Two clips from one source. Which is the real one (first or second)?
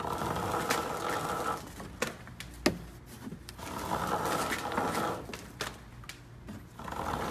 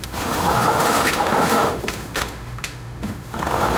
first